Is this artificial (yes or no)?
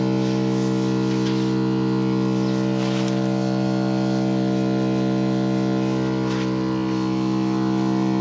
no